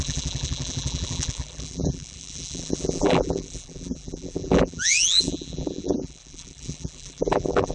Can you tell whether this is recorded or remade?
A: remade